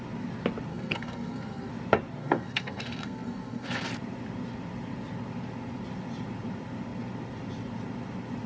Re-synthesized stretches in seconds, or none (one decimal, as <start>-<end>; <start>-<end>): 0.7-1.7; 2.2-3.9